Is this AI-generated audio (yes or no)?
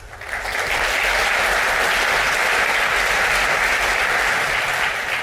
no